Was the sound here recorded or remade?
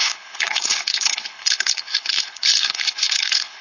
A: remade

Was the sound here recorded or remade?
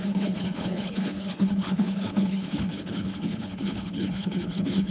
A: remade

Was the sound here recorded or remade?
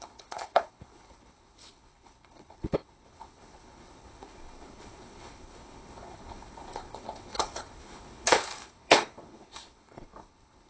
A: remade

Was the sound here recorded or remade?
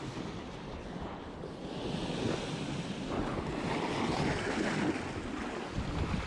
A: recorded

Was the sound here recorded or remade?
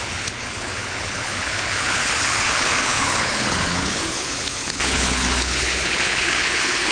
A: remade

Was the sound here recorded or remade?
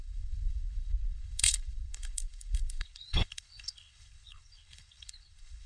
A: remade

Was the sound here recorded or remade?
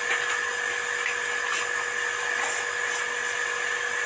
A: recorded